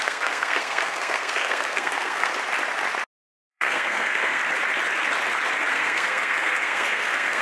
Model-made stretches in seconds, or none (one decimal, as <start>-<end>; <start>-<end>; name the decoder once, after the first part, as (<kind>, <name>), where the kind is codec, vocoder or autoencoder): 0.0-2.3 (codec, SNAC); 3.5-4.4; 5.7-7.4